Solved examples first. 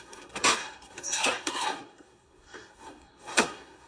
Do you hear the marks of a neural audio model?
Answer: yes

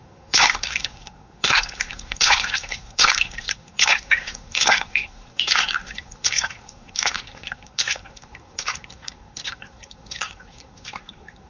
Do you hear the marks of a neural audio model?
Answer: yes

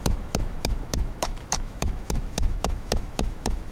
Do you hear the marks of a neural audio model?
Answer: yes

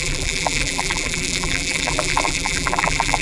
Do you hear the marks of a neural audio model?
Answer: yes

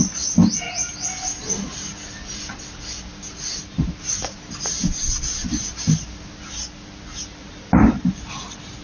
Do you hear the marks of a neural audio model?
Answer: no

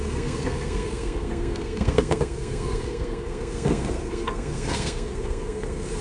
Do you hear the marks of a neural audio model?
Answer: yes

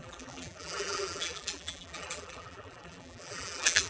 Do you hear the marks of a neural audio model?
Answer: yes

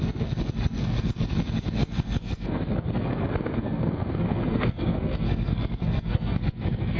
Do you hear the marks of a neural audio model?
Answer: yes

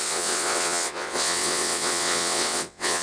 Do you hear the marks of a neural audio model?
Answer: yes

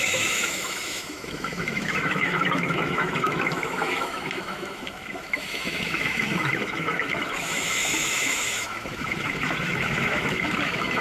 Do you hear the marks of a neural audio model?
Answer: yes